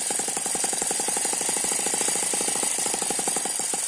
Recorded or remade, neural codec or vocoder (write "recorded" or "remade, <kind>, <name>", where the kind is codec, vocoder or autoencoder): remade, vocoder, BigVGAN v2